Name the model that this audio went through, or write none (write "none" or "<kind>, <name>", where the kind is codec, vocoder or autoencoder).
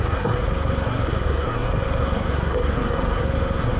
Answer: codec, SNAC